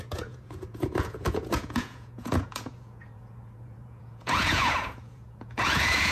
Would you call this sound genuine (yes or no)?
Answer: no